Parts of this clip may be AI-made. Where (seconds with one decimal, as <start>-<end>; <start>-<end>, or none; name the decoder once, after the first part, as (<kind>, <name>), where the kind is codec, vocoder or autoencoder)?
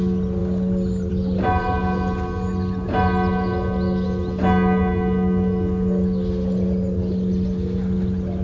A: none